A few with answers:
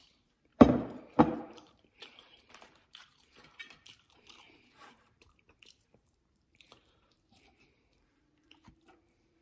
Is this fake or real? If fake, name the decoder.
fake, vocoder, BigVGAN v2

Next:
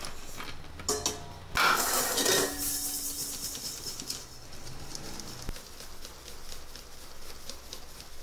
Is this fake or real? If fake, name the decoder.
real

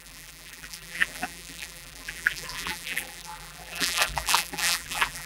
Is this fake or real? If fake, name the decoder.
fake, vocoder, BigVGAN v2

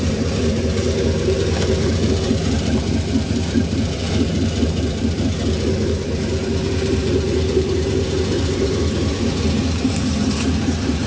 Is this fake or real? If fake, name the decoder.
fake, vocoder, BigVGAN v2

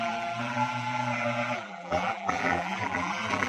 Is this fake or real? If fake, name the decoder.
fake, vocoder, BigVGAN v2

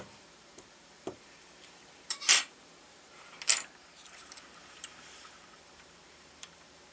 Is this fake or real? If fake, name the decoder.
fake, vocoder, BigVGAN v2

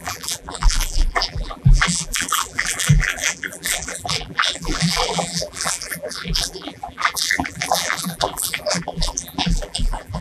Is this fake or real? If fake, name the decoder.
fake, vocoder, BigVGAN v2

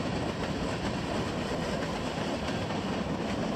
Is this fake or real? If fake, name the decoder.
real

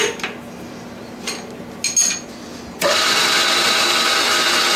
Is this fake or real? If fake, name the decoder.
real